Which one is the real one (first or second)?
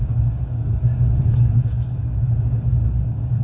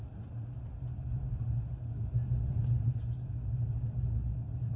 second